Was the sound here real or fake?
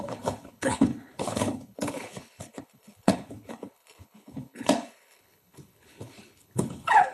fake